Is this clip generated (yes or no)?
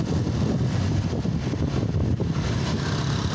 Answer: yes